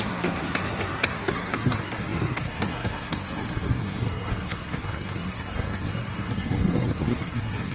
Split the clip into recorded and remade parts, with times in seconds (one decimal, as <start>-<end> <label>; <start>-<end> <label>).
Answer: 0.0-7.7 remade